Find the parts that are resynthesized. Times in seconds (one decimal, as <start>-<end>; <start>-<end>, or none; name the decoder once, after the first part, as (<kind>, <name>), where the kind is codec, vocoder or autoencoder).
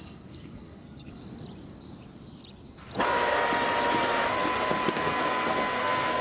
0.0-1.2 (codec, SNAC); 4.9-6.2